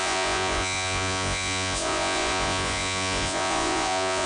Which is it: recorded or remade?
remade